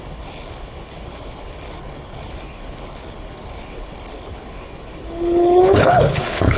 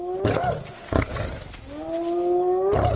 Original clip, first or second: second